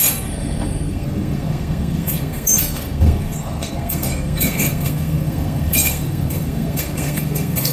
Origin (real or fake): fake